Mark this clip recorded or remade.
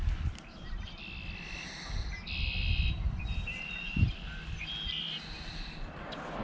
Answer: recorded